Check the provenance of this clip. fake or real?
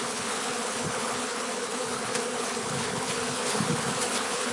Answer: fake